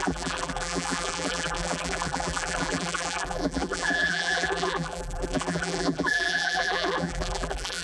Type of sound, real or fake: fake